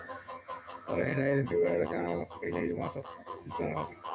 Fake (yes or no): yes